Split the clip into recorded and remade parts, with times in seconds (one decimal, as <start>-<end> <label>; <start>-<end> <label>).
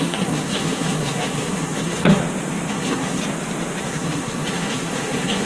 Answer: 0.0-2.2 remade; 2.2-2.7 recorded; 2.7-3.2 remade; 3.2-3.8 recorded; 3.8-5.5 remade